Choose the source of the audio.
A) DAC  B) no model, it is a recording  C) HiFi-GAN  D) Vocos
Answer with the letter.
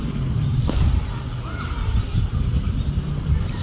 B